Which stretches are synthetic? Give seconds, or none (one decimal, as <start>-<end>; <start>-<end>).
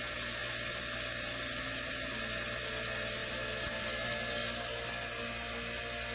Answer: none